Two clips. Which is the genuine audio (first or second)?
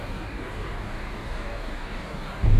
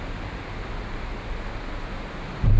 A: second